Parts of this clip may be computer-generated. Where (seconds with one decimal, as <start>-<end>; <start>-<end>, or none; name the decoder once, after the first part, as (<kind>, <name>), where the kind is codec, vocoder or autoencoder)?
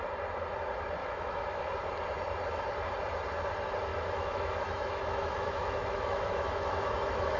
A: 1.0-1.6 (autoencoder, DAC-VAE); 3.9-7.4